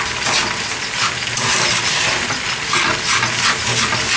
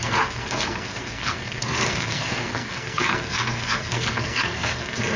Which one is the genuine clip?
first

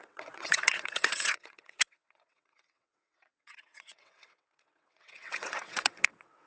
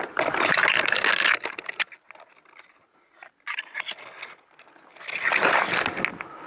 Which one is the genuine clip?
second